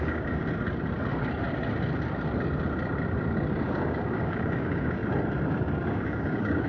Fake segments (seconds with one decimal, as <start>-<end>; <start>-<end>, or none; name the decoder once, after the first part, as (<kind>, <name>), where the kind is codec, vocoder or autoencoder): 0.0-0.4 (codec, DAC); 3.5-5.0; 5.6-6.7